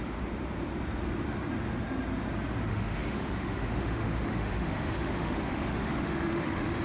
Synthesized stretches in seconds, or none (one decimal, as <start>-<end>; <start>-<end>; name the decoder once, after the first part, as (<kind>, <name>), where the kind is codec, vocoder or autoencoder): 2.7-6.8 (autoencoder, DAC-VAE)